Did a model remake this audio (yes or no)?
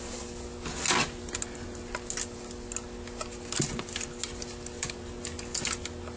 no